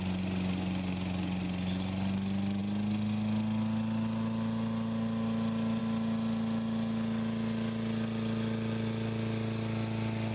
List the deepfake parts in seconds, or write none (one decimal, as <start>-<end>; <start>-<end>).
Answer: none